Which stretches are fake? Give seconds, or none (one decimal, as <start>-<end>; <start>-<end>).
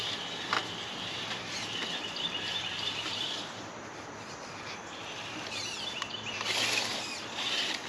0.0-4.8; 5.9-7.9